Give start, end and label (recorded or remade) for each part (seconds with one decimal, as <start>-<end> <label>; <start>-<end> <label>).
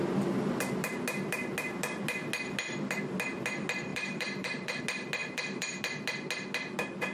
0.0-3.9 recorded; 3.9-4.8 remade; 4.8-5.2 recorded; 5.2-5.8 remade; 5.8-7.1 recorded